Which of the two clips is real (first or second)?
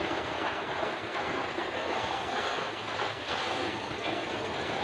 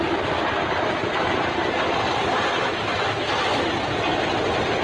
second